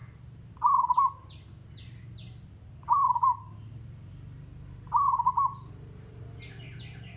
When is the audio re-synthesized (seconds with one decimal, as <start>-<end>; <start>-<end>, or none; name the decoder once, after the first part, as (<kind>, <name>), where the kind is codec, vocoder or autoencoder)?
none